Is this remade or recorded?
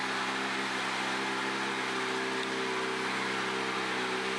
recorded